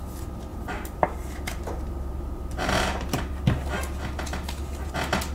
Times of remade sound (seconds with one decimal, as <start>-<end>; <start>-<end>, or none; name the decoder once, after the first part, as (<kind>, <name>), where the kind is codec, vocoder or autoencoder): 0.5-3.2 (vocoder, BigVGAN v2)